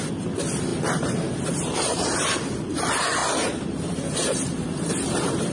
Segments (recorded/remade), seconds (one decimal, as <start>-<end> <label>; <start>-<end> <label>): 0.0-0.7 recorded; 0.7-2.7 remade; 2.7-3.2 recorded; 3.2-4.9 remade; 4.9-5.5 recorded